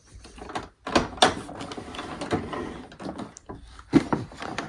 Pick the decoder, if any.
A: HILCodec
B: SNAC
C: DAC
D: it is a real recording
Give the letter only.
D